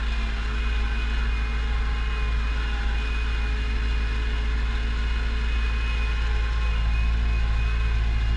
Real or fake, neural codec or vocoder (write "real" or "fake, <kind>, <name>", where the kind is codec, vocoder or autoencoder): real